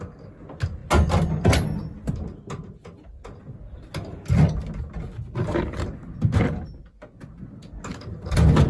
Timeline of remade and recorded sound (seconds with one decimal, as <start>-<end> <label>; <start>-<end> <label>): 0.0-8.7 recorded